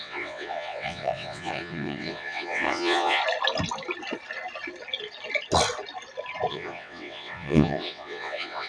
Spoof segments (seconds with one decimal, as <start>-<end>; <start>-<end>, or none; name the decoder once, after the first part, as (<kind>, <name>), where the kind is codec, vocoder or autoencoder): 0.0-3.2 (vocoder, WaveNeXt); 6.5-8.7